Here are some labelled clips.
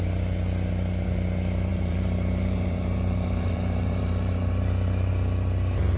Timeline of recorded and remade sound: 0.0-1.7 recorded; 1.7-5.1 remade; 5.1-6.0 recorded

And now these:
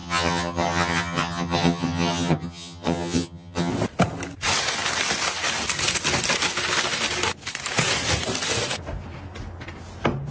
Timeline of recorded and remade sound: 0.0-3.7 remade; 3.7-10.3 recorded